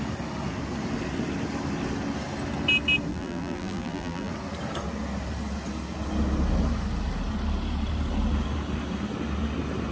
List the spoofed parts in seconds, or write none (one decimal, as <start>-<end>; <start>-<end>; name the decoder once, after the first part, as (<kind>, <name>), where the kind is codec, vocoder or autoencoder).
3.1-4.3 (vocoder, BigVGAN v2)